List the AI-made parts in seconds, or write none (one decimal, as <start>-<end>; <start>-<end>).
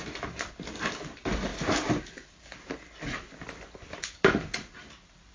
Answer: none